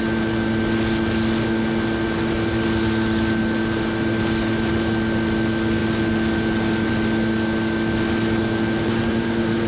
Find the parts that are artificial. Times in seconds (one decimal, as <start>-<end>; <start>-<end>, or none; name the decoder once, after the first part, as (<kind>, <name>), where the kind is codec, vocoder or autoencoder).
9.1-9.7 (vocoder, BigVGAN v2)